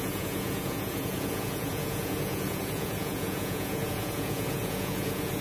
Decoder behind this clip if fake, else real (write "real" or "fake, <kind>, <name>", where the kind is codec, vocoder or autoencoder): fake, vocoder, Vocos